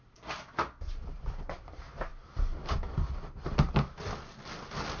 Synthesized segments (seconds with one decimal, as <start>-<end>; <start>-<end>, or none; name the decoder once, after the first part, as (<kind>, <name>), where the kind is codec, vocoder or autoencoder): none